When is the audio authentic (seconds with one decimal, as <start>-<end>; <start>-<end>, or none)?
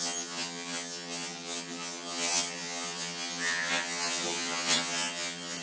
none